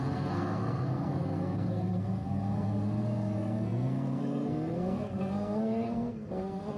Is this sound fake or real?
fake